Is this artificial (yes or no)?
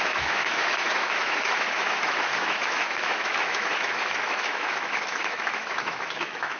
yes